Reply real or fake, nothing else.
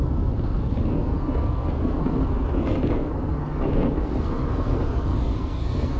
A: fake